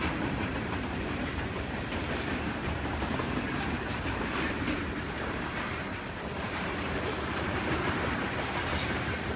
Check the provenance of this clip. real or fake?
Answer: fake